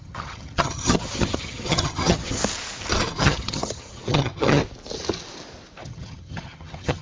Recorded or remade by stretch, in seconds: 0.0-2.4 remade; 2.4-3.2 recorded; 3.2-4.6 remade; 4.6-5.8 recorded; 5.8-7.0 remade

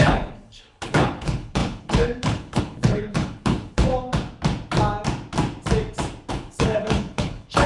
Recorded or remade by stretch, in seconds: 0.0-3.9 remade; 3.9-6.3 recorded; 6.3-7.7 remade

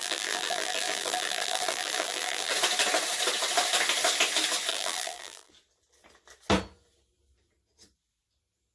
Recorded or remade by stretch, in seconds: 0.0-2.5 remade; 2.5-4.7 recorded; 4.7-5.5 remade; 5.5-8.7 recorded

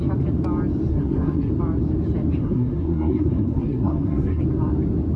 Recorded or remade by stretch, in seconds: 0.0-0.9 recorded; 0.9-1.5 remade; 1.5-2.4 recorded; 2.4-4.4 remade; 4.4-5.2 recorded

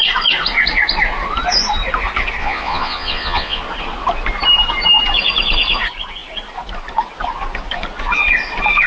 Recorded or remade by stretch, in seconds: 0.0-2.4 recorded; 2.4-3.6 remade; 3.6-8.9 recorded

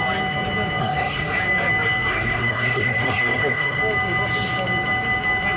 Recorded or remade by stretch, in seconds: 0.0-0.8 recorded; 0.8-1.4 remade; 1.4-2.1 recorded; 2.1-3.8 remade; 3.8-5.6 recorded

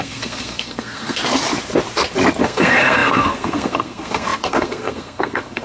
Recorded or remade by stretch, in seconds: 0.0-1.2 remade; 1.2-2.4 recorded; 2.4-5.6 remade